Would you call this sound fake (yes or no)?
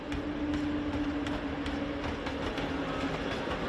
no